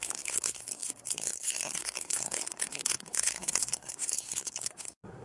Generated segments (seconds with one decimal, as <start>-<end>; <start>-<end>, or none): 0.0-5.2